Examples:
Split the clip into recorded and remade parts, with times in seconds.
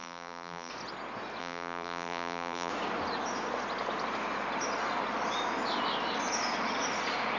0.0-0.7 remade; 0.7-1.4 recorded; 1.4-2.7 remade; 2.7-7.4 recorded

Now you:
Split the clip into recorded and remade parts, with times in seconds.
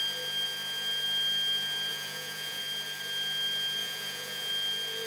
0.0-1.9 recorded; 1.9-2.6 remade; 2.6-3.8 recorded; 3.8-4.5 remade; 4.5-5.1 recorded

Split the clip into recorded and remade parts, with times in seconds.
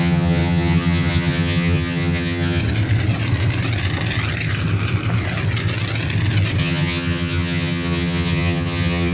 0.0-2.6 remade; 2.6-6.6 recorded; 6.6-9.1 remade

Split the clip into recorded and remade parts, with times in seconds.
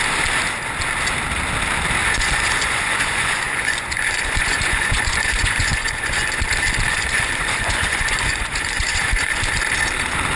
0.0-2.0 recorded; 2.0-6.4 remade; 6.4-6.9 recorded; 6.9-9.6 remade; 9.6-10.4 recorded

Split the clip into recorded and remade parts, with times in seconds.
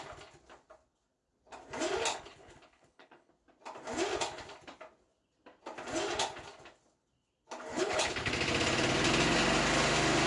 0.0-2.1 recorded; 2.1-3.3 remade; 3.3-7.7 recorded; 7.7-8.3 remade; 8.3-10.3 recorded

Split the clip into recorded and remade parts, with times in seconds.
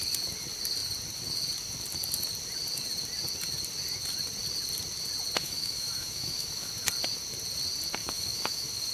0.0-5.4 recorded; 5.4-6.7 remade; 6.7-8.0 recorded; 8.0-8.9 remade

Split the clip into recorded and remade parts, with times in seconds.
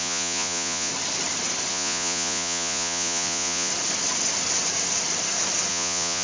0.0-0.9 remade; 0.9-1.7 recorded; 1.7-3.7 remade; 3.7-5.7 recorded; 5.7-6.2 remade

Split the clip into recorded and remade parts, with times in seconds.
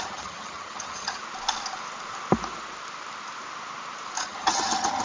0.0-1.2 remade; 1.2-4.2 recorded; 4.2-5.0 remade